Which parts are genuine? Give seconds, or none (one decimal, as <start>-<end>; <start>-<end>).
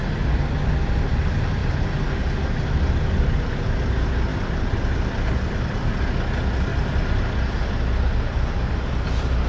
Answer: 0.0-9.5